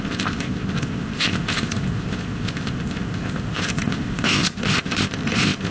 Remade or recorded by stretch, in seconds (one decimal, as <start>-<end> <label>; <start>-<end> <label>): 0.0-5.7 remade